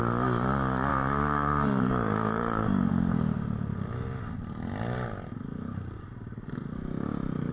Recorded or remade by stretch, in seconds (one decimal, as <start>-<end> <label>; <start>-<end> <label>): 0.0-0.9 recorded; 0.9-2.9 remade; 2.9-7.5 recorded